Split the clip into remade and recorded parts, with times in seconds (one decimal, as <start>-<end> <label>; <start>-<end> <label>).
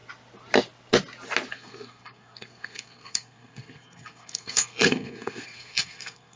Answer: 0.0-1.5 recorded; 1.5-6.4 remade